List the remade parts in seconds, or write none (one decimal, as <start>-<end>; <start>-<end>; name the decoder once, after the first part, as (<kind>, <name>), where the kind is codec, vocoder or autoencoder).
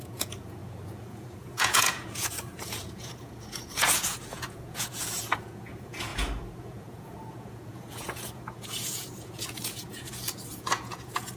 0.0-11.4 (vocoder, Vocos)